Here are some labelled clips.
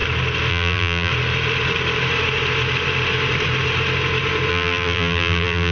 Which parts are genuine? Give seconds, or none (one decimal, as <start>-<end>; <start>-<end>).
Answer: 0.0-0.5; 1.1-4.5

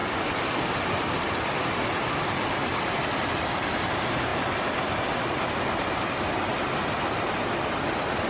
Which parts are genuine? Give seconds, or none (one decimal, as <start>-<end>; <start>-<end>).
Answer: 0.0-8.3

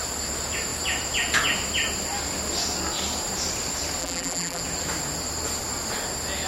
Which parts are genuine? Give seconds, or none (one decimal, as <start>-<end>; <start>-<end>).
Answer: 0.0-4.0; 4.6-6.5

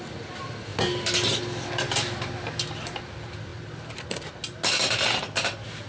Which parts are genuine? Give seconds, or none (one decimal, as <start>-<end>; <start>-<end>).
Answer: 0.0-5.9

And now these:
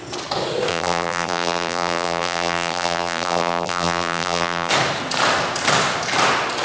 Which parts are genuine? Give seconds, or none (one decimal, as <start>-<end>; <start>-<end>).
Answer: 0.0-0.7; 4.7-6.6

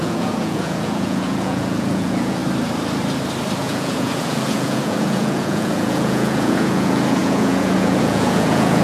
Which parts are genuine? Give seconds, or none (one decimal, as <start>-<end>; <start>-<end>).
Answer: 2.4-3.6

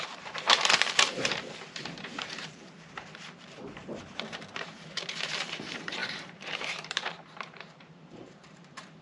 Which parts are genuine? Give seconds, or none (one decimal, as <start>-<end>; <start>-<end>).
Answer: none